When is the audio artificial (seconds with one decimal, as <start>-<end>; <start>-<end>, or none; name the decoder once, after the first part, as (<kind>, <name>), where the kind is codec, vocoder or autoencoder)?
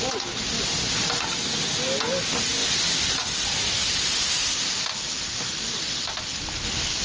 none